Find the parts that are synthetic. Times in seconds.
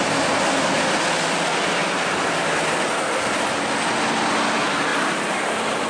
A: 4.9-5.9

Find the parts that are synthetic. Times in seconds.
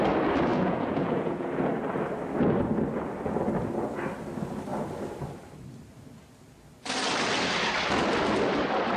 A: 0.5-1.7